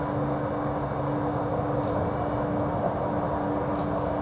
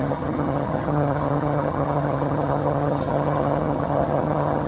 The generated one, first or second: second